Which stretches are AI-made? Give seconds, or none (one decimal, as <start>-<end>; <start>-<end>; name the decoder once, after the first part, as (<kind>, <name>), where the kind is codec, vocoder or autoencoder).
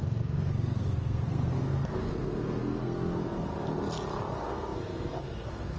0.0-3.5 (codec, SNAC); 4.3-5.8